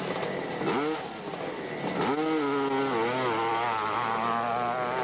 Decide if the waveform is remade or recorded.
recorded